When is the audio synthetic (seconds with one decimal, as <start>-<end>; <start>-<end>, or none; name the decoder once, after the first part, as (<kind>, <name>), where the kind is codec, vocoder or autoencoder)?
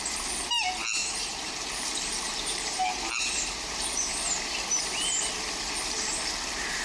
1.0-4.0 (vocoder, BigVGAN v2)